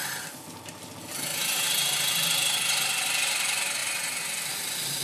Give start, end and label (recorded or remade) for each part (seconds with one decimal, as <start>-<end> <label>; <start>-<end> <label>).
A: 0.0-0.6 recorded; 0.6-1.3 remade; 1.3-2.8 recorded; 2.8-3.8 remade; 3.8-4.5 recorded; 4.5-5.0 remade